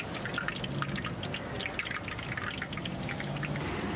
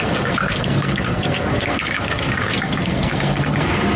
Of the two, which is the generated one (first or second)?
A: second